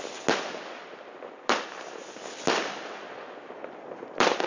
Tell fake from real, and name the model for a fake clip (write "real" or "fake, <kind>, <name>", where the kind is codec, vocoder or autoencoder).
real